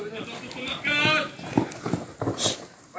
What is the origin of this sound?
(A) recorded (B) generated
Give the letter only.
A